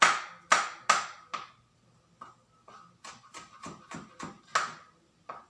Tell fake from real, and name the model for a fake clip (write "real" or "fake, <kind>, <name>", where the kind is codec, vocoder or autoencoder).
real